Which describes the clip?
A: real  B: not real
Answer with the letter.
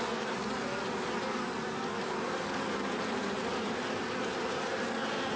A